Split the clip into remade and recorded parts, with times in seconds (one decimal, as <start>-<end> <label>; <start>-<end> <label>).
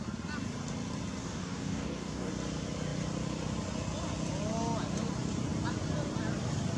0.0-1.2 recorded; 1.2-2.3 remade; 2.3-6.8 recorded